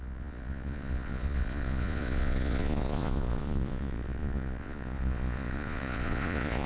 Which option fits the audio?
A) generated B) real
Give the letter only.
A